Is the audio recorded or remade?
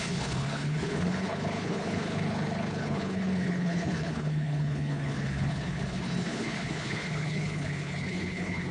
remade